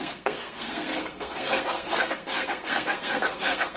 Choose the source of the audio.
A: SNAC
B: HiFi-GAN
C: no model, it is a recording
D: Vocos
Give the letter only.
A